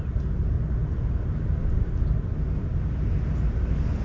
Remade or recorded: recorded